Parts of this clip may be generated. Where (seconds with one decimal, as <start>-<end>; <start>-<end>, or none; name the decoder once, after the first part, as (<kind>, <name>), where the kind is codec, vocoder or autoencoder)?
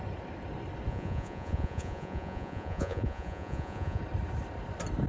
0.9-4.0 (vocoder, Vocos)